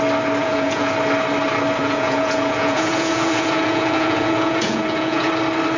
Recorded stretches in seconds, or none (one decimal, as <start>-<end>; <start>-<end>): 0.0-0.4; 0.9-1.8; 5.3-5.8

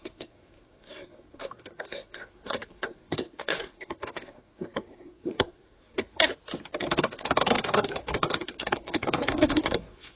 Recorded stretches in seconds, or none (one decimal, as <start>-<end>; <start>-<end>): 6.3-7.0

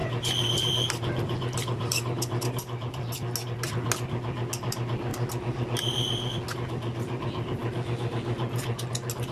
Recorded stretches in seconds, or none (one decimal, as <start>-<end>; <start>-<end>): 2.4-9.3

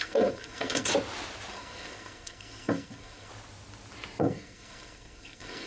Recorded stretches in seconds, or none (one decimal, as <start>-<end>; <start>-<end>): 0.9-1.5; 3.3-4.2

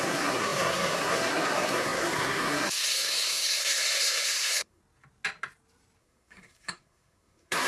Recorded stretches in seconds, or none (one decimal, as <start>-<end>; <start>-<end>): 4.8-6.0

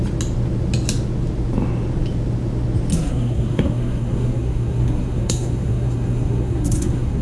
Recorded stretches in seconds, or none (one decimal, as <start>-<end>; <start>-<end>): 0.0-2.9

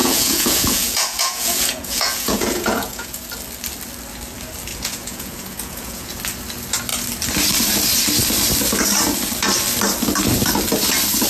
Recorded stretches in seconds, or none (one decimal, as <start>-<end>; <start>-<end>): 3.3-4.7; 6.2-11.3

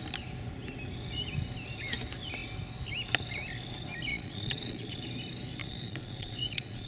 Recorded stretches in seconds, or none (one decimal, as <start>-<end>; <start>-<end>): 0.0-4.1; 5.0-5.6